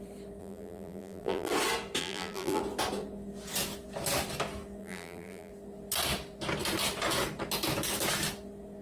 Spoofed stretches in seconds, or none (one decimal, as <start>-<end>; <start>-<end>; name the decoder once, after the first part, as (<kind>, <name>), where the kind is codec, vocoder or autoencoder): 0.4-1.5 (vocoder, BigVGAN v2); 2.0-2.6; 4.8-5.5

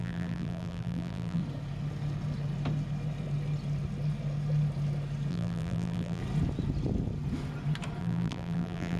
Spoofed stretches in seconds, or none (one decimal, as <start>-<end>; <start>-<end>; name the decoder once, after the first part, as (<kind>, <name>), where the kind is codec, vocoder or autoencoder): 0.0-1.4 (vocoder, BigVGAN v2); 5.3-6.2; 8.0-9.0

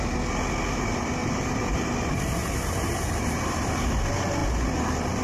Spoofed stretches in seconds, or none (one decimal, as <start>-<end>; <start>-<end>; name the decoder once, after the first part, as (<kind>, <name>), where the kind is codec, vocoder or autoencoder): 1.2-4.0 (vocoder, BigVGAN v2)

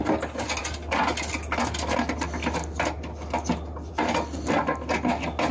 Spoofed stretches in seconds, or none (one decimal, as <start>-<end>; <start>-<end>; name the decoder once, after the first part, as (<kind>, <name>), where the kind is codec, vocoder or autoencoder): none